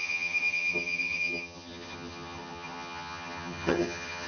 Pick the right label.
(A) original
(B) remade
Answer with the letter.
B